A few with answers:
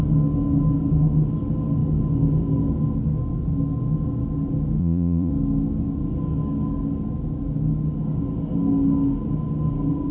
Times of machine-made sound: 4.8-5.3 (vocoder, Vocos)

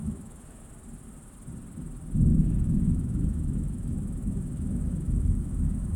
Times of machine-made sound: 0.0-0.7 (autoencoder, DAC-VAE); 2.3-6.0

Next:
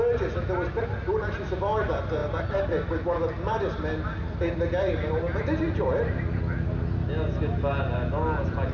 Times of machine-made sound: none

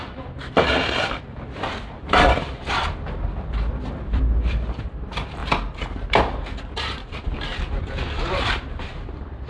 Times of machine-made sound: 0.0-9.5 (vocoder, BigVGAN v2)